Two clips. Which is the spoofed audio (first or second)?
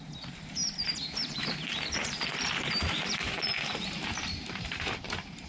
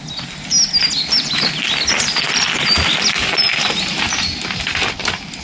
first